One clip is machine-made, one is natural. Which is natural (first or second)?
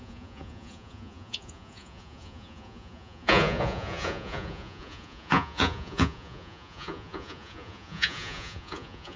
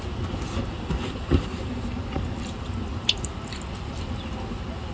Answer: second